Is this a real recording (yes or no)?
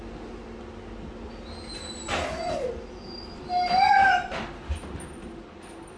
yes